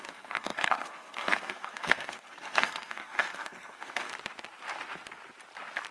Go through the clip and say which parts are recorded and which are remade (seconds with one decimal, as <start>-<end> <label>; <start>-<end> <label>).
0.0-4.1 remade; 4.1-5.9 recorded